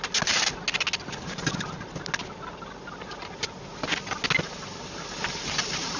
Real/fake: real